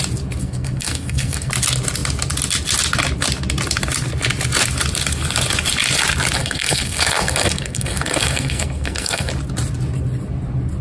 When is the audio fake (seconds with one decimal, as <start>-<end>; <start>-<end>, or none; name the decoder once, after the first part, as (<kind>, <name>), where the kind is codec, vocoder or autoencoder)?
0.4-1.5 (codec, SNAC); 6.4-9.3